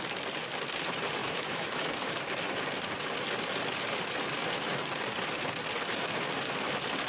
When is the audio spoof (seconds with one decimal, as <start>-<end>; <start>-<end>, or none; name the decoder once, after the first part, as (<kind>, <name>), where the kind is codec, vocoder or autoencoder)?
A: 1.2-2.1 (autoencoder, DAC-VAE)